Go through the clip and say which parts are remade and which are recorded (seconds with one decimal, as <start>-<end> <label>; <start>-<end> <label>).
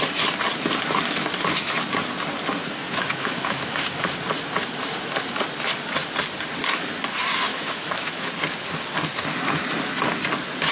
0.0-2.8 recorded; 2.8-4.0 remade; 4.0-7.5 recorded; 7.5-8.3 remade; 8.3-10.7 recorded